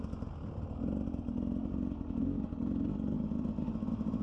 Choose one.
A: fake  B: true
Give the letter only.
B